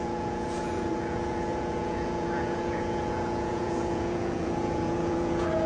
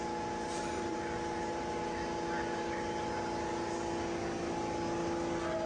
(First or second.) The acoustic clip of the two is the second